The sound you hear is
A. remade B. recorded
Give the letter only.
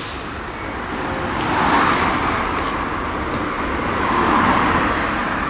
B